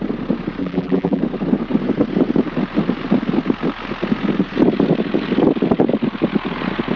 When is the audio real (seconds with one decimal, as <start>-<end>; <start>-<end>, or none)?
0.0-0.6; 1.2-7.0